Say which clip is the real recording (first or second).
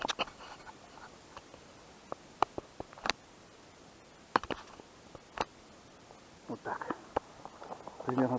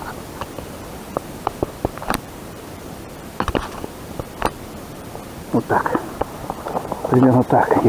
first